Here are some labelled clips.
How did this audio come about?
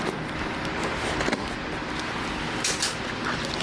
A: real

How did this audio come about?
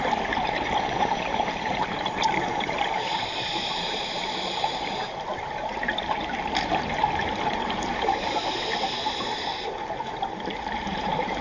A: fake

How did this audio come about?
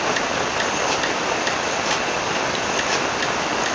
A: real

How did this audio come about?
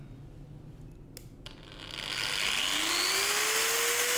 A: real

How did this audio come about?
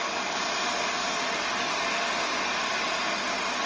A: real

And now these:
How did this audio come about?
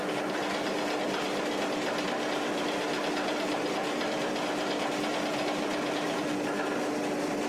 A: real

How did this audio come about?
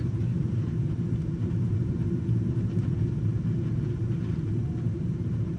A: fake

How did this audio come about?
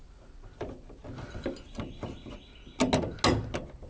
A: real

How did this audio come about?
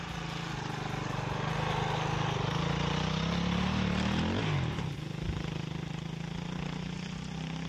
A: real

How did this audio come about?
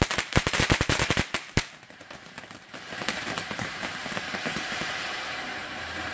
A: fake